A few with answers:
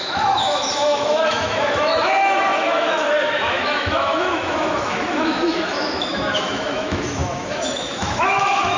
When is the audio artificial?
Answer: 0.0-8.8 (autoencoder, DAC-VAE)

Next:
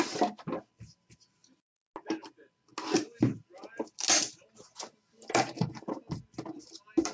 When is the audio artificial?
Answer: none

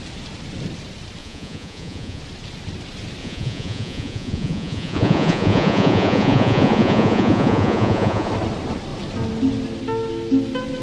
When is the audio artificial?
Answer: 1.2-2.2 (vocoder, Vocos); 3.2-8.3

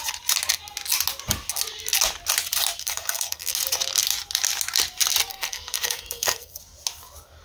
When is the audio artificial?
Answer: 2.8-3.5 (codec, SNAC); 5.3-6.6

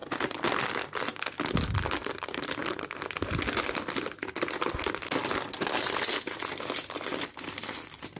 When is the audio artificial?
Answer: 1.5-8.2 (vocoder, BigVGAN v2)